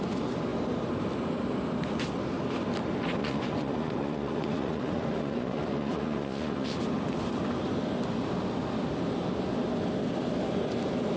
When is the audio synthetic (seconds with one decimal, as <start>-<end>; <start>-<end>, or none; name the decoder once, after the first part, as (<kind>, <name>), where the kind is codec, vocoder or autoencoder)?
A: 3.2-6.8 (vocoder, Vocos)